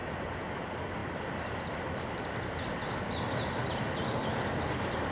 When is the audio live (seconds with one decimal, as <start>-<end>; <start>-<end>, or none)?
0.0-5.1